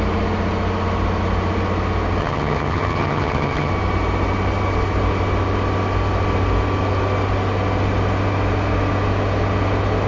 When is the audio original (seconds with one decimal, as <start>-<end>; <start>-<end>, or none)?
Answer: 0.0-2.2; 3.7-10.1